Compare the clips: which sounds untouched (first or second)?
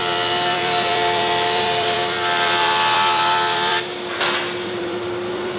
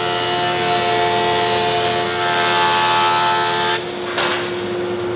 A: second